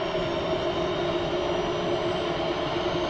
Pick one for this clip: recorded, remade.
recorded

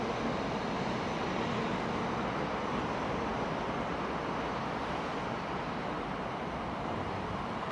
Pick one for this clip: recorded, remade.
remade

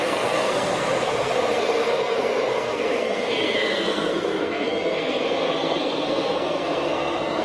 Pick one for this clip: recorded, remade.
remade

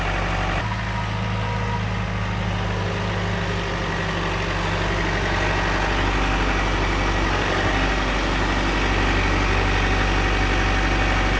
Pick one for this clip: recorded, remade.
recorded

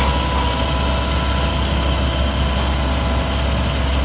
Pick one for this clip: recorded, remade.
recorded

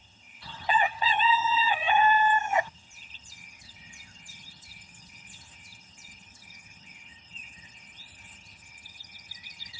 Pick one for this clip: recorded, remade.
remade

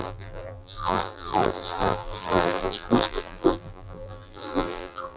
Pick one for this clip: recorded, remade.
remade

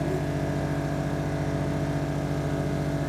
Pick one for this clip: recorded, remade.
recorded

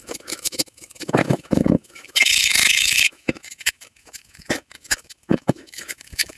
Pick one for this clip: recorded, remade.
remade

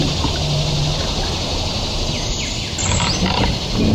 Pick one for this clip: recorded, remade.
recorded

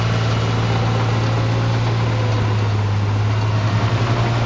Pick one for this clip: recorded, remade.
recorded